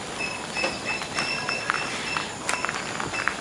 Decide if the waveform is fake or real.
real